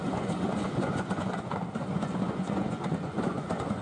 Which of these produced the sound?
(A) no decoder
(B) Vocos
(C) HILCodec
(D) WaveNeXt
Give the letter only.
B